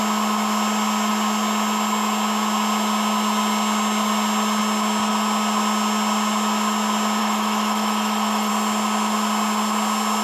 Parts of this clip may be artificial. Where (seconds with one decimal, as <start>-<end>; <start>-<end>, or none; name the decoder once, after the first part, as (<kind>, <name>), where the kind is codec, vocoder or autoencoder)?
7.2-8.5 (autoencoder, DAC-VAE)

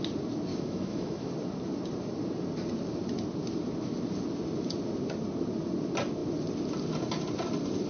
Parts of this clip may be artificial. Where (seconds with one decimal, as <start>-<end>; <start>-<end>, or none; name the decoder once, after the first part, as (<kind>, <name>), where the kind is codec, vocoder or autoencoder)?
0.5-1.3 (autoencoder, DAC-VAE)

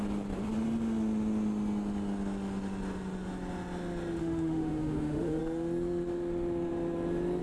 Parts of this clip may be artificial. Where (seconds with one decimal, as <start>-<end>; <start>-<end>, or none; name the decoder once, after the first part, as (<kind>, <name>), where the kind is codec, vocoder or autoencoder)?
4.2-5.4 (autoencoder, DAC-VAE)

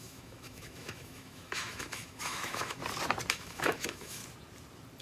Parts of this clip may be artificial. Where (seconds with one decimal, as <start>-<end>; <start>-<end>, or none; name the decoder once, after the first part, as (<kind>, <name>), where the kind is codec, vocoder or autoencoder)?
0.0-2.8 (autoencoder, DAC-VAE); 3.3-4.2

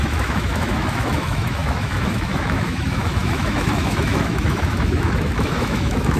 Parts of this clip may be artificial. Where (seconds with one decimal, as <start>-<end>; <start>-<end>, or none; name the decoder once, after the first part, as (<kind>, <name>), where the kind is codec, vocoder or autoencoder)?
0.0-6.2 (autoencoder, DAC-VAE)

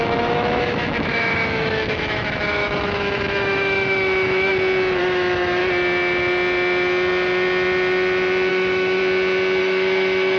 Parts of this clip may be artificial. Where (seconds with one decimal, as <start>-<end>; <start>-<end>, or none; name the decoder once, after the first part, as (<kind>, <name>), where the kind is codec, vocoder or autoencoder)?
0.0-4.5 (autoencoder, DAC-VAE); 5.0-5.6; 8.5-9.0; 9.6-10.4